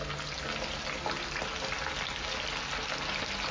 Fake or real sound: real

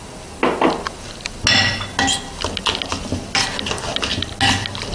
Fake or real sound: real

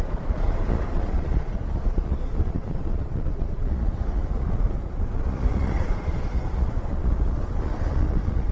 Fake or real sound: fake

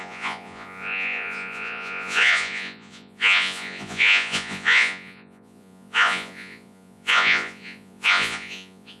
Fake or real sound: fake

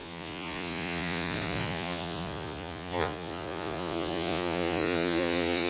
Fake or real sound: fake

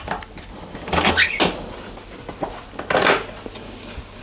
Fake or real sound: real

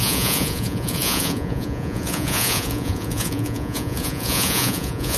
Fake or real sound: fake